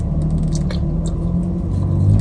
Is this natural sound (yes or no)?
yes